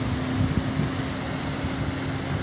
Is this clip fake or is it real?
real